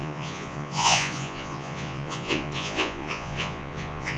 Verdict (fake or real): fake